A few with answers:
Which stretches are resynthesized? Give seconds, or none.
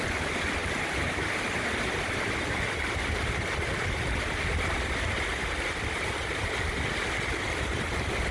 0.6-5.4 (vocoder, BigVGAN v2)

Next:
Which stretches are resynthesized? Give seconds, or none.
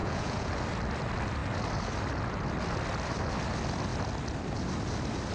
0.0-0.5 (vocoder, Vocos)